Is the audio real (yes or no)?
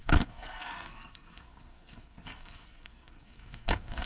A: no